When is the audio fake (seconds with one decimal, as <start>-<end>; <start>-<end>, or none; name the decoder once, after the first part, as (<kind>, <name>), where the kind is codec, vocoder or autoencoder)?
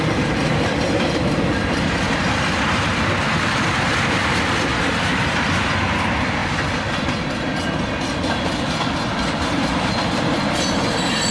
0.0-11.3 (vocoder, BigVGAN v2)